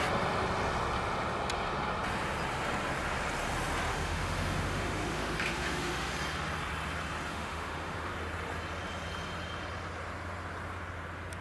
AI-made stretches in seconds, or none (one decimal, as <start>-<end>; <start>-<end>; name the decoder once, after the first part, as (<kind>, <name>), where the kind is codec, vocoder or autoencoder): 3.9-6.1 (autoencoder, DAC-VAE); 7.3-8.1